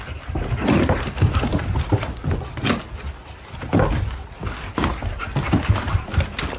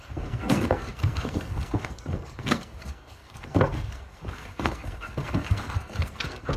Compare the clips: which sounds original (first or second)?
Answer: first